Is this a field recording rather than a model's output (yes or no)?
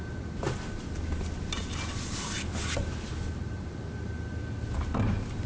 yes